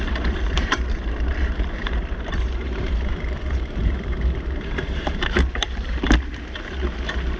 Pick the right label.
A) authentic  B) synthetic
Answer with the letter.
B